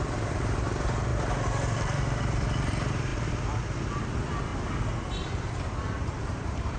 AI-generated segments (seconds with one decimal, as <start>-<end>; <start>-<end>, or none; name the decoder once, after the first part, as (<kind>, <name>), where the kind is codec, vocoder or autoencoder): 0.0-1.1 (vocoder, BigVGAN v2); 2.7-4.5; 5.2-6.8